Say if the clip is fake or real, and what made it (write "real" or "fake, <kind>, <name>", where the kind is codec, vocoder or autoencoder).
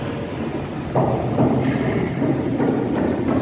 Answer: fake, vocoder, BigVGAN v2